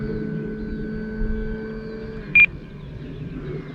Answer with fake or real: real